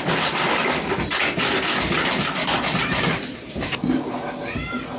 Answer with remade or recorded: recorded